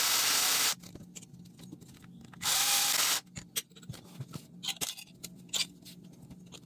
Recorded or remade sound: recorded